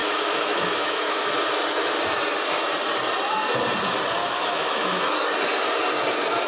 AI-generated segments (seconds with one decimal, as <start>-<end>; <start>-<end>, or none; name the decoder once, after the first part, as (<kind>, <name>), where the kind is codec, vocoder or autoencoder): 0.0-1.3 (autoencoder, DAC-VAE); 4.2-5.0